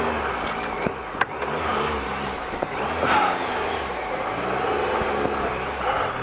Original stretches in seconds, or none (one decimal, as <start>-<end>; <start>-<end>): 0.0-1.7; 4.7-6.2